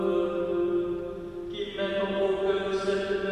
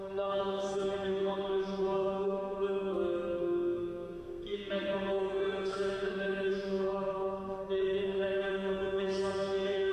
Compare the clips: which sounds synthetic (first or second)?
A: second